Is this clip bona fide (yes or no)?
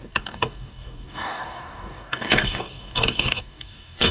no